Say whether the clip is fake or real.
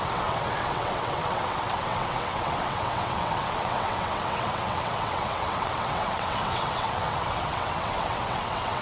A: fake